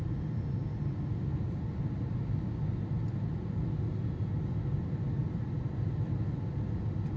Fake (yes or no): no